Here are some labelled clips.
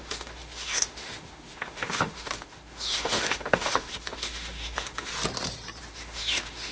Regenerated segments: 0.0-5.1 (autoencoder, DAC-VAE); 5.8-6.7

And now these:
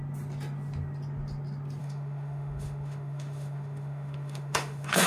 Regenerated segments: 1.8-5.1 (autoencoder, DAC-VAE)

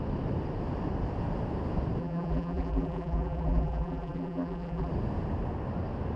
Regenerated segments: 2.0-4.9 (vocoder, BigVGAN v2)